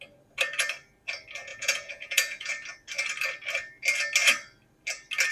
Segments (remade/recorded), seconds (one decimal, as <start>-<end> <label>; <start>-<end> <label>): 0.0-1.5 recorded; 1.5-2.5 remade; 2.5-5.3 recorded